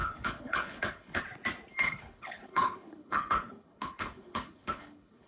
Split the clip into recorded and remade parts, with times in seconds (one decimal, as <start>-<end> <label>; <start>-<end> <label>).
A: 0.0-1.2 remade; 1.2-1.7 recorded; 1.7-5.3 remade